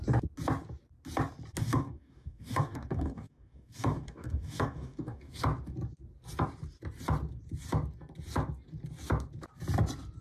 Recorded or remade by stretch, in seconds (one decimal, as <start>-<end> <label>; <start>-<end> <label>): 0.0-1.6 recorded; 1.6-5.3 remade; 5.3-10.2 recorded